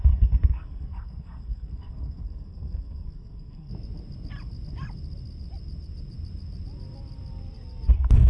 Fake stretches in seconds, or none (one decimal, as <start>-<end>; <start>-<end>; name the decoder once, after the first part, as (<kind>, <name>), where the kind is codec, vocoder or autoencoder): 0.0-3.7 (codec, SNAC); 7.9-8.3